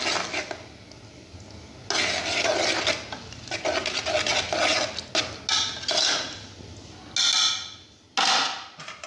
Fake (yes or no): no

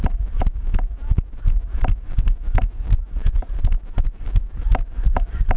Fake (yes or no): no